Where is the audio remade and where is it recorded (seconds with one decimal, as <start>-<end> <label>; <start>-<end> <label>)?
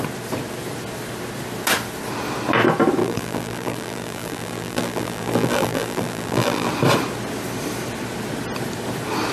0.0-3.0 recorded; 3.0-6.7 remade; 6.7-9.3 recorded